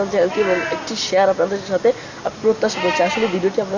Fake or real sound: real